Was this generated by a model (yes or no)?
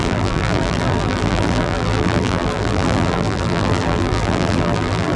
yes